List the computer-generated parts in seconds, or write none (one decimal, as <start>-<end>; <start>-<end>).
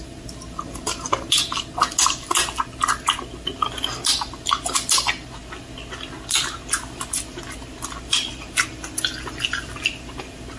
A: none